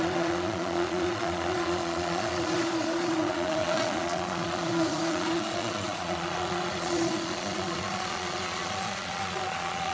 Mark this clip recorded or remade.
remade